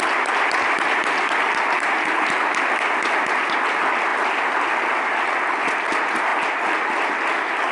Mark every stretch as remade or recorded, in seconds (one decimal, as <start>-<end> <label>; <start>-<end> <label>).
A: 0.0-7.7 recorded